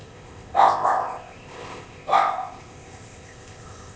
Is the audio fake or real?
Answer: fake